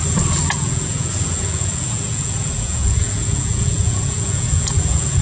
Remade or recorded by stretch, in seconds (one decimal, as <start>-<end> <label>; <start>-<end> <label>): 0.0-0.5 recorded; 0.5-5.2 remade